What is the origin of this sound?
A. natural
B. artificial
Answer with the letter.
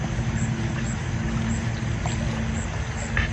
A